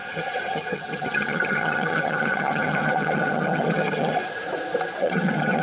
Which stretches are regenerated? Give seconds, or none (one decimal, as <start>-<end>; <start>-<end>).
0.0-4.2; 5.0-5.6